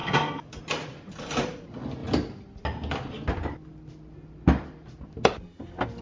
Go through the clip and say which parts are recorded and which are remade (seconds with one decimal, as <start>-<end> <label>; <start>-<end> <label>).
0.0-0.6 remade; 0.6-6.0 recorded